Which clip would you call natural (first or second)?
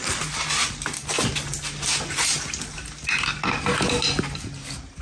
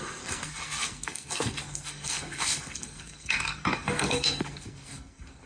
first